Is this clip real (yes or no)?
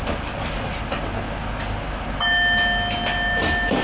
yes